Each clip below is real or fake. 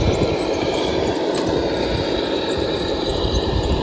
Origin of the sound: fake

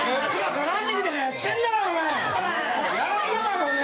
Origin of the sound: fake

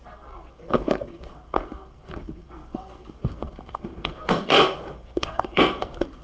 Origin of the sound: fake